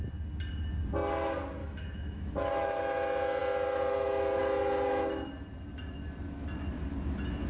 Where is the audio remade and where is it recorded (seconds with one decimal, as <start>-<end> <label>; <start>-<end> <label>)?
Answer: 0.0-1.6 recorded; 1.6-2.8 remade; 2.8-7.5 recorded